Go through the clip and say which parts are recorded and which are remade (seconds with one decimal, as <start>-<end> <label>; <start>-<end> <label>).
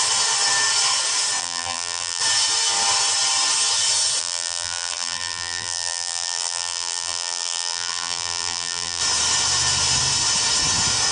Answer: 0.0-1.4 recorded; 1.4-2.2 remade; 2.2-4.2 recorded; 4.2-9.0 remade; 9.0-11.1 recorded